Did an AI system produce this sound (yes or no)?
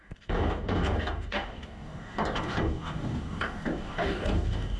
yes